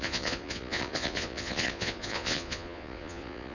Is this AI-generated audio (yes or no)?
yes